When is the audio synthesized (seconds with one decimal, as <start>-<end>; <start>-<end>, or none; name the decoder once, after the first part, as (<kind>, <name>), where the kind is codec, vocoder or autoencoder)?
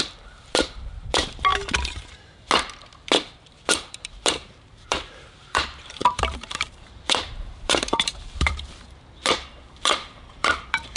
0.0-1.5 (vocoder, BigVGAN v2); 3.4-11.0